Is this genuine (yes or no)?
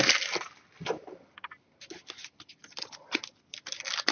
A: yes